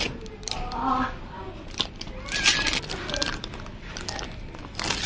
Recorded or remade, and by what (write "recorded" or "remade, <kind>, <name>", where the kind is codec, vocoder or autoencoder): recorded